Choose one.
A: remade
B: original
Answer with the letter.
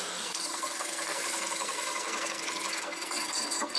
A